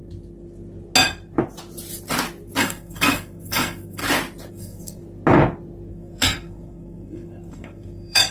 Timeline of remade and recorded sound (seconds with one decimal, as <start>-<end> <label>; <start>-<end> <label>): 0.0-2.6 recorded; 2.6-4.0 remade; 4.0-4.5 recorded; 4.5-5.0 remade; 5.0-5.9 recorded; 5.9-8.3 remade